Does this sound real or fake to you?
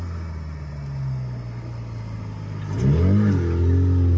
real